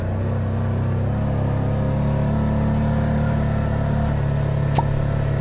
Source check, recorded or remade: recorded